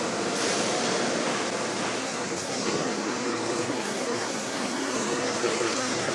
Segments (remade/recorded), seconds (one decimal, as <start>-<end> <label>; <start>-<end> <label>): 0.0-2.0 recorded; 2.0-6.1 remade